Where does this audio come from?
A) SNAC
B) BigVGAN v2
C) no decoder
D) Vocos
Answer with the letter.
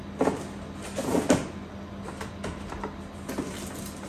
C